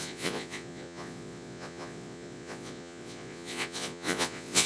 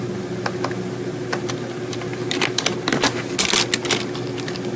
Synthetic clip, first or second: first